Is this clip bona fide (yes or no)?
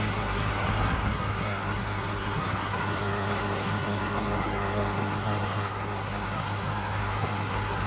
no